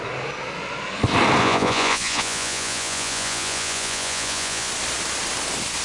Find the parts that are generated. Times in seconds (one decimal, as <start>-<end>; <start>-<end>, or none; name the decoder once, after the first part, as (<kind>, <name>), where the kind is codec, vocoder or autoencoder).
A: 1.4-4.7 (vocoder, Vocos)